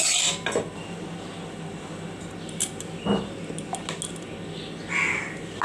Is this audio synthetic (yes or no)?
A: no